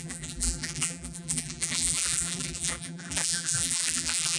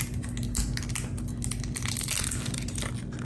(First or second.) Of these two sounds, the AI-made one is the first